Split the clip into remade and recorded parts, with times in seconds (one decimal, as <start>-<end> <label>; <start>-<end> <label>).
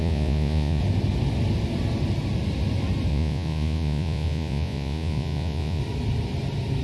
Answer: 0.0-0.8 remade; 0.8-3.1 recorded; 3.1-5.8 remade; 5.8-6.8 recorded